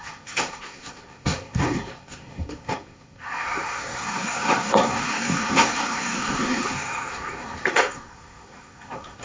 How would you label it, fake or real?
fake